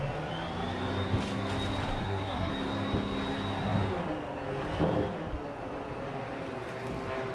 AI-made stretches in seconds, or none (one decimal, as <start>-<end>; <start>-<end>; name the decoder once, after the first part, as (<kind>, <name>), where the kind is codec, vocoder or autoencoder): 2.0-2.5 (codec, SNAC)